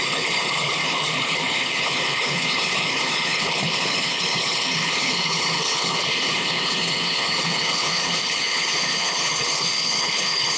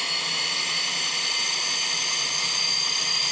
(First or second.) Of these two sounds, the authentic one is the second